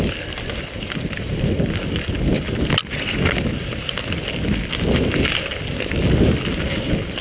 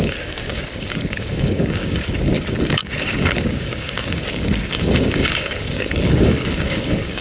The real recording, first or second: first